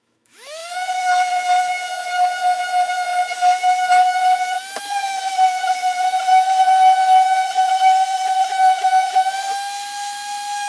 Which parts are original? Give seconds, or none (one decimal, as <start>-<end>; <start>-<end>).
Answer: none